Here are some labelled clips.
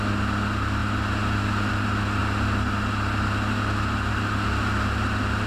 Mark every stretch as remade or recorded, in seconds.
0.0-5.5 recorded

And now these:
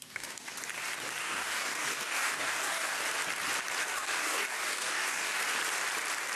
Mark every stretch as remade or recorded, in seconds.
0.0-0.5 remade; 0.5-1.2 recorded; 1.2-3.0 remade; 3.0-3.8 recorded; 3.8-5.4 remade; 5.4-6.4 recorded

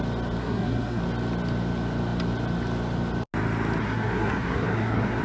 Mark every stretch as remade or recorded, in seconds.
0.0-0.4 recorded; 0.4-1.0 remade; 1.0-3.8 recorded; 3.8-5.2 remade

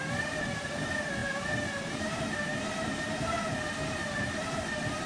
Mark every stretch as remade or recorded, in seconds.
0.0-5.1 remade

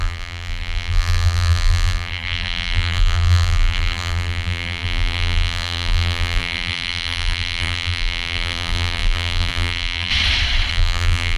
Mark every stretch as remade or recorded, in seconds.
0.0-10.1 remade; 10.1-10.7 recorded; 10.7-11.4 remade